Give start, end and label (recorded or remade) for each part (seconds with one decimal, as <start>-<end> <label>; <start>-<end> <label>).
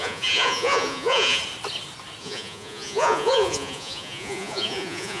0.0-1.4 remade; 1.4-2.2 recorded; 2.2-5.2 remade